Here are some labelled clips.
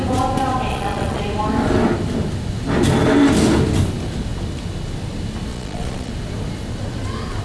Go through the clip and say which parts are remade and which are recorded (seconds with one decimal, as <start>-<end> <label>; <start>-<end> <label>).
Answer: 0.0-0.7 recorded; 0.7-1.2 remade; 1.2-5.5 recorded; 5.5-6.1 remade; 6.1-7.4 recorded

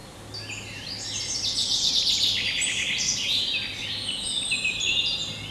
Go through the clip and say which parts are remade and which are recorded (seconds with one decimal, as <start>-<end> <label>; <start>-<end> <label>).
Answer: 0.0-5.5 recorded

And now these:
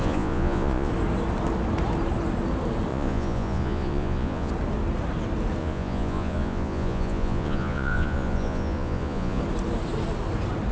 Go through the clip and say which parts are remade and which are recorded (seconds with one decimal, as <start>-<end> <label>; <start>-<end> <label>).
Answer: 0.0-0.9 remade; 0.9-2.9 recorded; 2.9-4.5 remade; 4.5-5.6 recorded; 5.6-9.4 remade; 9.4-10.7 recorded

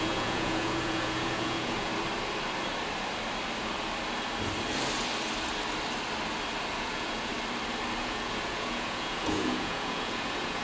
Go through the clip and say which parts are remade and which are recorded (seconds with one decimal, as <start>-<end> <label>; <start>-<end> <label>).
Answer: 0.0-1.9 remade; 1.9-6.8 recorded; 6.8-7.3 remade; 7.3-8.0 recorded; 8.0-10.6 remade

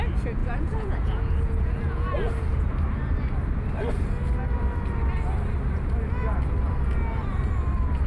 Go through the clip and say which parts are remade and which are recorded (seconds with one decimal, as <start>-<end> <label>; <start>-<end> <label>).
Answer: 0.0-0.4 recorded; 0.4-2.7 remade; 2.7-8.1 recorded

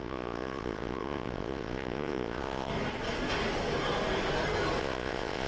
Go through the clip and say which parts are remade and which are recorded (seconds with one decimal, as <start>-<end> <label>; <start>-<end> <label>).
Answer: 0.0-2.7 remade; 2.7-4.8 recorded; 4.8-5.5 remade